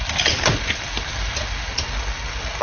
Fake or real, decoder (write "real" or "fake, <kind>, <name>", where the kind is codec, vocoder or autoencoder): real